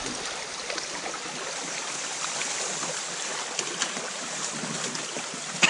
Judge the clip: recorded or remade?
recorded